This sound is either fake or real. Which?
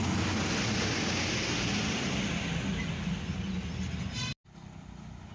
real